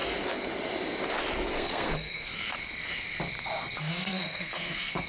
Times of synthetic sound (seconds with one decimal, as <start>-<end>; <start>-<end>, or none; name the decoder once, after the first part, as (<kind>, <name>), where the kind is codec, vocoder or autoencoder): 1.5-2.3 (codec, SNAC); 3.8-5.1